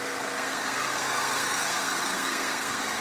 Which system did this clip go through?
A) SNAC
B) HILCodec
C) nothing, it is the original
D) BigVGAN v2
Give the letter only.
A